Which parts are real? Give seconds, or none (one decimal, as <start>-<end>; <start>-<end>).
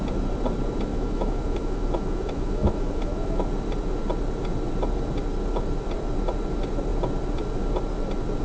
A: 0.0-0.9; 3.5-8.4